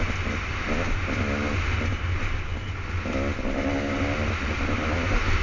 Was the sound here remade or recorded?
recorded